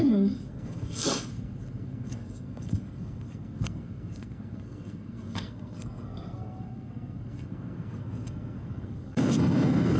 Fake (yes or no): yes